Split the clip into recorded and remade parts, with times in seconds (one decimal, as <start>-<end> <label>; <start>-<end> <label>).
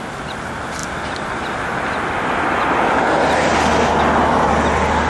0.0-5.1 recorded